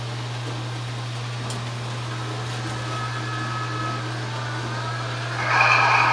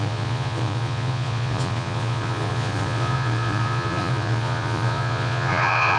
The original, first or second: first